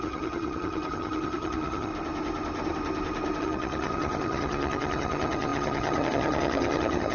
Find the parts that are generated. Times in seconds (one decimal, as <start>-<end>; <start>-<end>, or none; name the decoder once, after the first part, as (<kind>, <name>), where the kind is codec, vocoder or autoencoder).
0.0-1.9 (vocoder, HiFi-GAN); 3.4-7.1